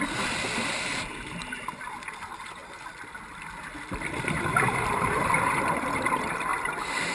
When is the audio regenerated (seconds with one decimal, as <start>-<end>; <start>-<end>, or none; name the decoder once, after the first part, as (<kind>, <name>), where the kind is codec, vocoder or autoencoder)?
0.0-7.1 (vocoder, BigVGAN v2)